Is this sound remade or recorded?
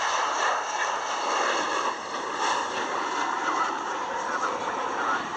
remade